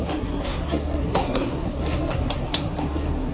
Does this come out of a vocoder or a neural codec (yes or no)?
yes